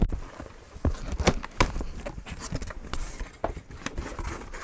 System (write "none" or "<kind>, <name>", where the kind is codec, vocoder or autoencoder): none